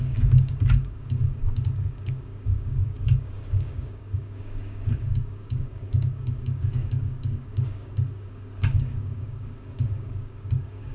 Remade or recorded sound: remade